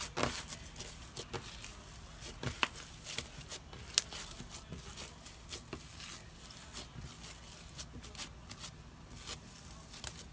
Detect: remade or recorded recorded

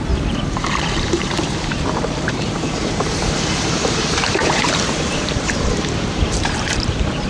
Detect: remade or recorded remade